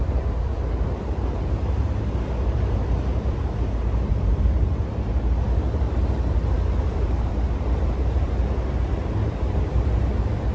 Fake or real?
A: fake